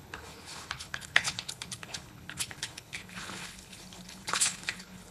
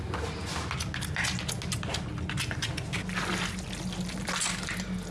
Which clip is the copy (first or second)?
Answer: first